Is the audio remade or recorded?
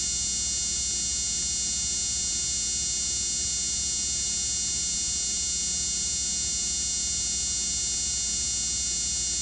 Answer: recorded